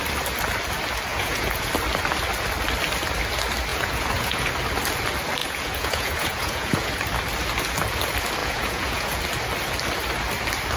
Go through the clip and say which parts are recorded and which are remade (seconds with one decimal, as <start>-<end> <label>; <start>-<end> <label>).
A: 0.0-1.1 recorded; 1.1-1.7 remade; 1.7-3.7 recorded; 3.7-4.5 remade; 4.5-5.4 recorded; 5.4-6.9 remade; 6.9-8.4 recorded; 8.4-9.2 remade; 9.2-10.8 recorded